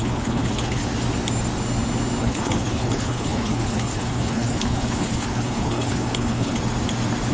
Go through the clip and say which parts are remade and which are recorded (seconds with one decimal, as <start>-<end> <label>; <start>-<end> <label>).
0.0-0.8 remade; 0.8-2.2 recorded; 2.2-6.5 remade; 6.5-7.3 recorded